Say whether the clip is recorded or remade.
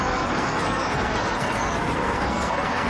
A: remade